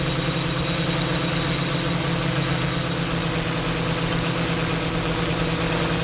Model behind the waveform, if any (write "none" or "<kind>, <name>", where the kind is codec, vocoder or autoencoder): vocoder, BigVGAN v2